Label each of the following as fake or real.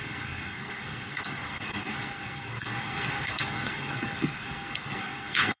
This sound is fake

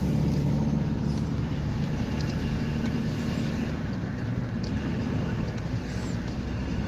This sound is real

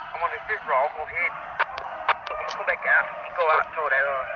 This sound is real